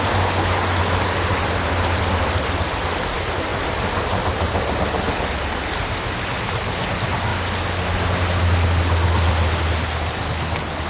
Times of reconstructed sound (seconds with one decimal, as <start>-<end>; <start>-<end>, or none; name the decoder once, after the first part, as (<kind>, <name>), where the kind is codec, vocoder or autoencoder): none